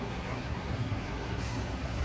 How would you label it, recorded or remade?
remade